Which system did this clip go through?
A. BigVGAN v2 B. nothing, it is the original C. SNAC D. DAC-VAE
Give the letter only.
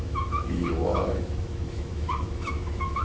D